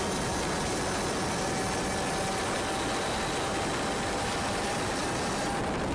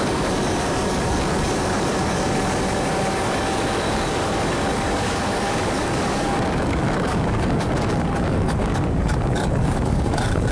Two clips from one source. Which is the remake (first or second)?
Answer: second